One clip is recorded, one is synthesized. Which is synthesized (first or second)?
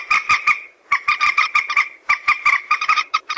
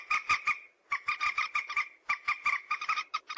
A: first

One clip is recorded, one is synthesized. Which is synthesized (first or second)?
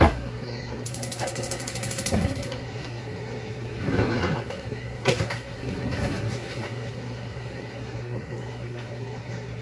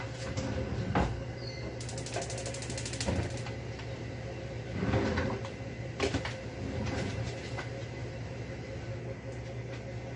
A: first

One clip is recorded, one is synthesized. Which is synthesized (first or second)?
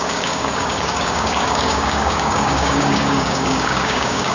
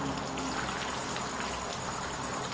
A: first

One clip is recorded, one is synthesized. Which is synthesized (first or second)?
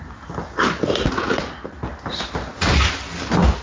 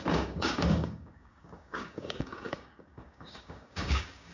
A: second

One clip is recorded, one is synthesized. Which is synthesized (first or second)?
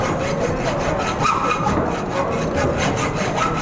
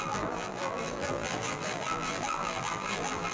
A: second